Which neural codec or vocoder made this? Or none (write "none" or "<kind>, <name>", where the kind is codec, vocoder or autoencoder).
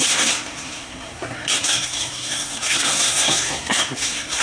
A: codec, SNAC